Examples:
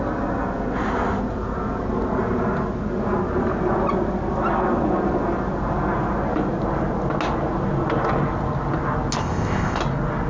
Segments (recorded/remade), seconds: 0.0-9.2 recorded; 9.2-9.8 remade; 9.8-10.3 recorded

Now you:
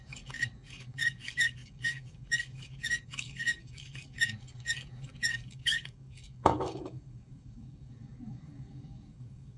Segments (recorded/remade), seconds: 0.0-9.6 remade

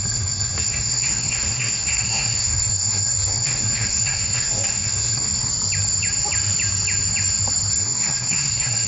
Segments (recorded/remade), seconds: 0.0-5.5 remade; 5.5-7.7 recorded; 7.7-8.9 remade